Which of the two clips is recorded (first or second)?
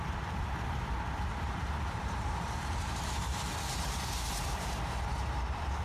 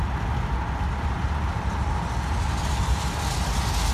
second